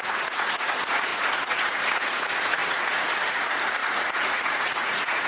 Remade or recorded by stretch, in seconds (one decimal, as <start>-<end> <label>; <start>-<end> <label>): 0.0-5.3 remade